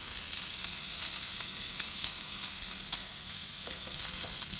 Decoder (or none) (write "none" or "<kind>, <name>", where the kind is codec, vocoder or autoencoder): codec, SNAC